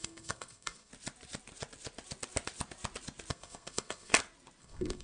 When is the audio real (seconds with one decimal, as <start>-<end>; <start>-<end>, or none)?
0.9-3.3; 4.1-4.6